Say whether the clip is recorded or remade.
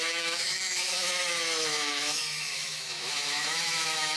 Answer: remade